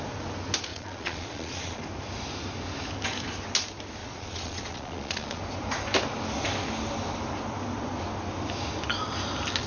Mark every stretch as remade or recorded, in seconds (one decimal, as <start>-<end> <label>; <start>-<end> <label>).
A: 0.0-0.7 recorded; 0.7-1.8 remade; 1.8-4.0 recorded; 4.0-5.4 remade; 5.4-9.7 recorded